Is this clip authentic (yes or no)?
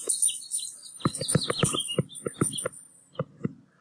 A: yes